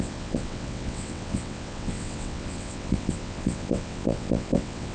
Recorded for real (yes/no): no